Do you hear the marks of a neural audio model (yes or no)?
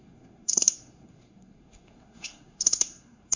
yes